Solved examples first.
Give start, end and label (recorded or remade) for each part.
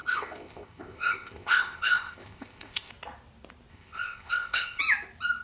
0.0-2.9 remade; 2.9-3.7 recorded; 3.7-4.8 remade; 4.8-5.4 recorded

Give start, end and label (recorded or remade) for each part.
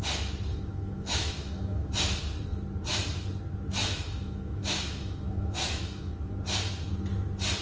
0.0-0.5 recorded; 0.5-1.9 remade; 1.9-3.8 recorded; 3.8-6.3 remade; 6.3-7.6 recorded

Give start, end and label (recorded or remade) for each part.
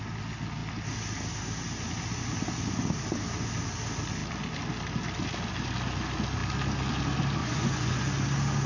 0.0-7.4 recorded; 7.4-8.0 remade; 8.0-8.7 recorded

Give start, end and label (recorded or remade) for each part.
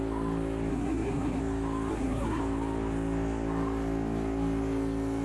0.0-0.7 recorded; 0.7-1.4 remade; 1.4-1.9 recorded; 1.9-2.4 remade; 2.4-5.2 recorded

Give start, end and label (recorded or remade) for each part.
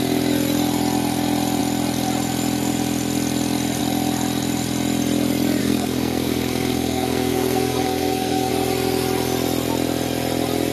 0.0-5.6 recorded; 5.6-8.5 remade; 8.5-10.7 recorded